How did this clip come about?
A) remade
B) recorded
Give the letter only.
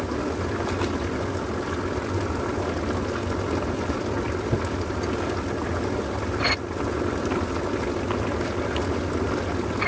B